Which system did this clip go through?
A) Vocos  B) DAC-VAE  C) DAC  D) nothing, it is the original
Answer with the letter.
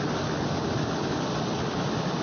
D